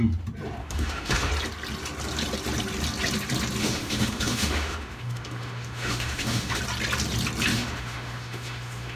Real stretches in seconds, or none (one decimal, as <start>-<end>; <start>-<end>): 0.0-0.6; 1.3-3.6; 6.6-7.5